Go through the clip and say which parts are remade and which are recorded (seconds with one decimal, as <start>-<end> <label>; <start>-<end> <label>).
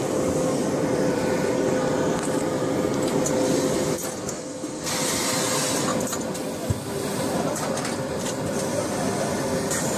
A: 0.0-4.2 recorded; 4.2-4.9 remade; 4.9-10.0 recorded